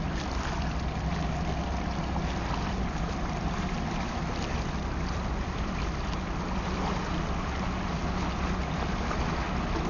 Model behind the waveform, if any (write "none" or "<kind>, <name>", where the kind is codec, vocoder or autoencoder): none